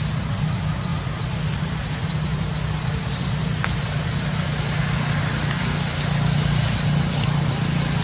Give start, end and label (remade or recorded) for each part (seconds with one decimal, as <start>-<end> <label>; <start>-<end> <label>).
0.0-8.0 recorded